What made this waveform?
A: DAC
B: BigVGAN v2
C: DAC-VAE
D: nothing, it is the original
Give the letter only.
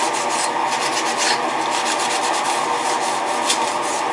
D